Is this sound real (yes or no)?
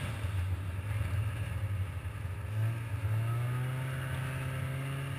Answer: yes